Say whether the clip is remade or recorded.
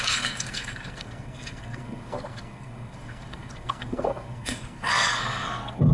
remade